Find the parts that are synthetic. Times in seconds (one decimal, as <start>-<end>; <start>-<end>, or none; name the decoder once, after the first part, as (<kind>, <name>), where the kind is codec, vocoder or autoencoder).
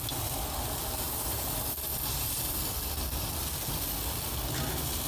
1.9-2.5 (vocoder, BigVGAN v2)